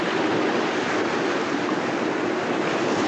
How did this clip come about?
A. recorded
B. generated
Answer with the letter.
A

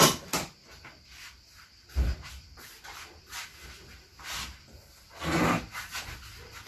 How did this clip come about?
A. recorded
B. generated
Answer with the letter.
A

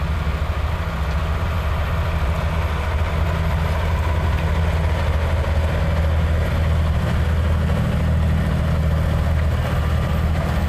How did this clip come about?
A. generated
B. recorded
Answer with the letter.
B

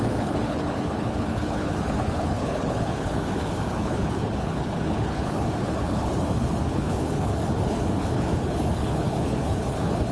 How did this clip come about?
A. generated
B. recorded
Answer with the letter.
A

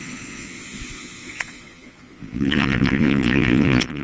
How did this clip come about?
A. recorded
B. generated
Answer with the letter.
B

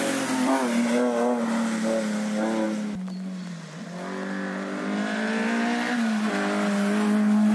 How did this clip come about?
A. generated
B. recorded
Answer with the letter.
B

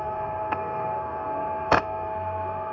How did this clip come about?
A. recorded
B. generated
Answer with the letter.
B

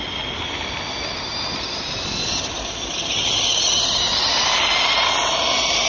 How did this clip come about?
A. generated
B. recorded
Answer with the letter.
B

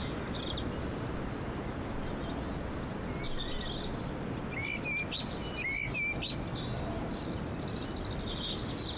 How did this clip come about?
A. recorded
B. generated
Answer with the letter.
A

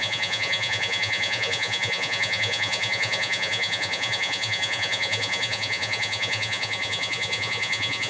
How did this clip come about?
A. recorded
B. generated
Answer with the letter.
B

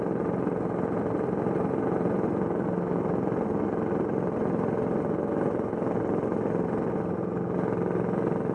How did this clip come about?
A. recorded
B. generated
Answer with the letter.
A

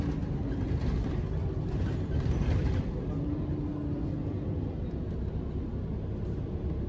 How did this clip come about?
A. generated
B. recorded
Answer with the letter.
B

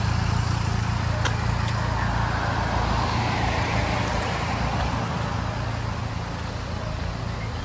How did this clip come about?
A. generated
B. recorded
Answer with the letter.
B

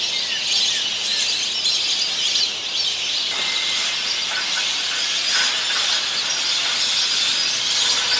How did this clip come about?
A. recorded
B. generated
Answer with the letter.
A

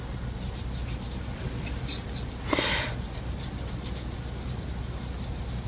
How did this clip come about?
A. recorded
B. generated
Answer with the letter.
A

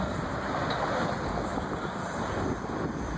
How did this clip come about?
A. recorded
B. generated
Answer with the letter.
A